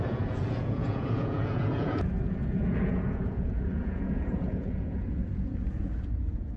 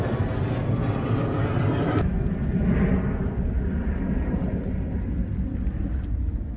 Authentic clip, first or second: second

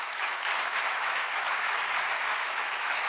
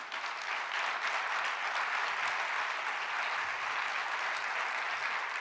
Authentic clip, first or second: second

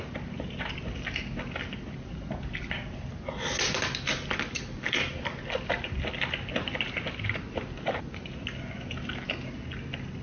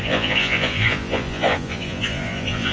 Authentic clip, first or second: first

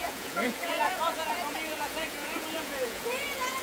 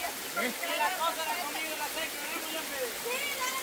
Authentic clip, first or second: second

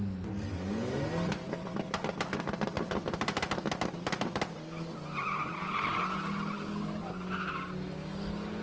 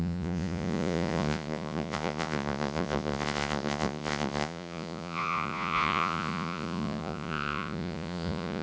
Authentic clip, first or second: first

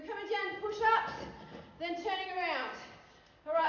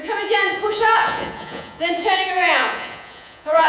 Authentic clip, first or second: first